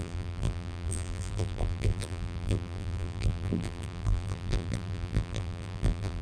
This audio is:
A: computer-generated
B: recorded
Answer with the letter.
A